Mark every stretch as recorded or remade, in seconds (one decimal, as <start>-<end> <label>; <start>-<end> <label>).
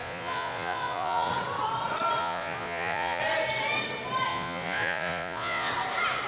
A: 0.0-1.3 remade; 1.3-2.2 recorded; 2.2-3.2 remade; 3.2-4.3 recorded; 4.3-5.7 remade; 5.7-6.3 recorded